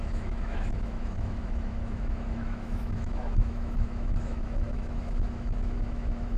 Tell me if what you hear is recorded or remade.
remade